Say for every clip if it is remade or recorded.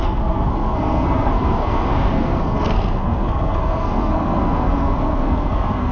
remade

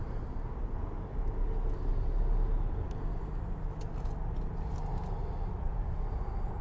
recorded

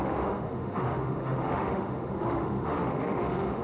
remade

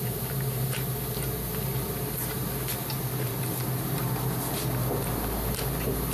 recorded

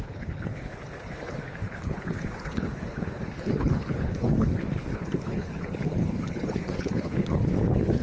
remade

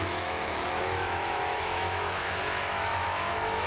remade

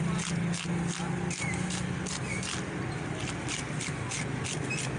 recorded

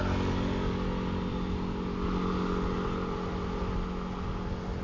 recorded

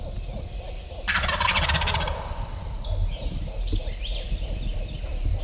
recorded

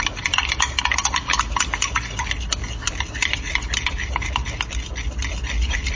recorded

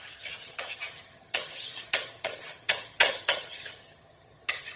remade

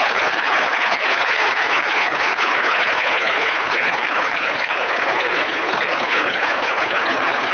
remade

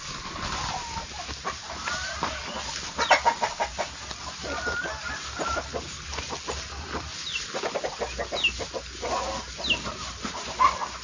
recorded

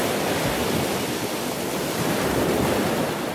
recorded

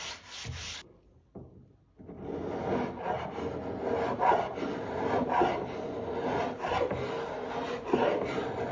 recorded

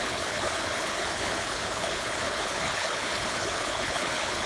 remade